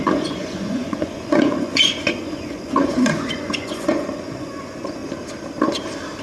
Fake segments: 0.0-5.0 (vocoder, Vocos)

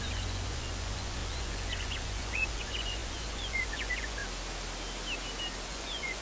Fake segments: 0.0-4.2 (vocoder, Vocos); 5.7-6.2

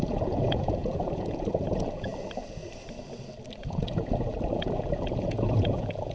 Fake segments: 0.0-2.1 (vocoder, Vocos); 3.6-6.1

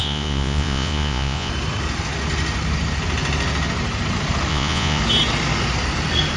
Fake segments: 0.0-1.5 (vocoder, Vocos); 4.5-5.0

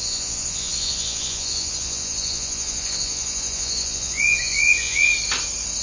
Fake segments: 0.0-5.1 (vocoder, Vocos)

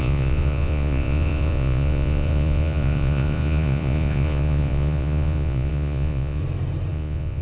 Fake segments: 0.0-6.4 (vocoder, Vocos); 6.9-7.4

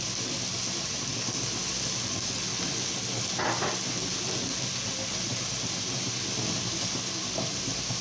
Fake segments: none